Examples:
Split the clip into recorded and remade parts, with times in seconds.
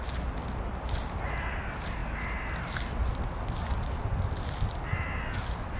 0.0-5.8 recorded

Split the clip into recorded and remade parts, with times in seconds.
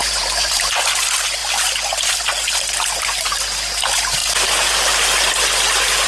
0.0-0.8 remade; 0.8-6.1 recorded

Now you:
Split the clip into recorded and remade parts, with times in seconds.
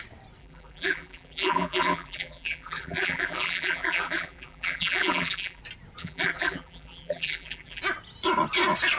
0.0-0.4 recorded; 0.4-5.6 remade; 5.6-6.0 recorded; 6.0-7.8 remade; 7.8-9.0 recorded